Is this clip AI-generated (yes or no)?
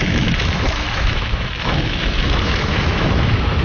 yes